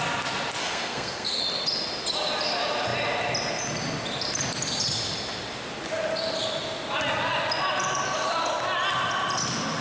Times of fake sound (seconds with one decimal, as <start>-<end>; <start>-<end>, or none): 0.6-1.4